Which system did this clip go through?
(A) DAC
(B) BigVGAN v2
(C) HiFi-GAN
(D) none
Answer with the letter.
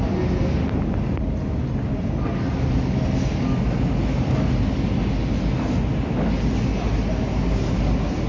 D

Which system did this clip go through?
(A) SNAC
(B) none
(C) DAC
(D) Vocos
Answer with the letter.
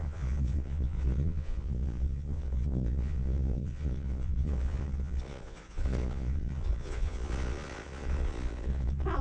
D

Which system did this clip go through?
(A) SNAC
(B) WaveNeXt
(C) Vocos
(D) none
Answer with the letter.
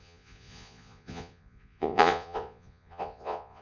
C